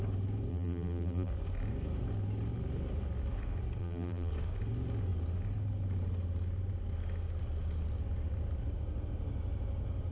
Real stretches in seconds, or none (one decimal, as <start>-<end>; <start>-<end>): 0.0-0.5; 1.3-3.8; 4.3-10.1